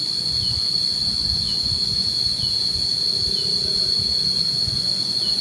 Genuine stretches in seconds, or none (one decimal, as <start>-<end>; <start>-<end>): 2.9-3.8